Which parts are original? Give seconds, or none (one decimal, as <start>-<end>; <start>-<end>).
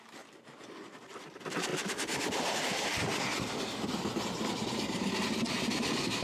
0.0-1.7; 3.0-6.2